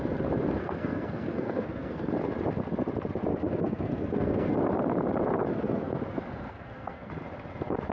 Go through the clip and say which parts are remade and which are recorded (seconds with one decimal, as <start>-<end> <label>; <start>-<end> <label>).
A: 0.0-0.6 recorded; 0.6-2.1 remade; 2.1-3.3 recorded; 3.3-4.5 remade; 4.5-5.5 recorded; 5.5-6.0 remade; 6.0-6.5 recorded; 6.5-7.1 remade; 7.1-7.9 recorded